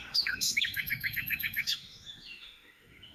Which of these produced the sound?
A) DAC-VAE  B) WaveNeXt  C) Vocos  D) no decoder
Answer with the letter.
A